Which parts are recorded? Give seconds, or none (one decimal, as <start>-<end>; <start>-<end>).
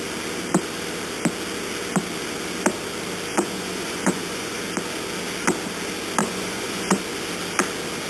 0.0-3.3; 4.6-6.2; 7.0-8.1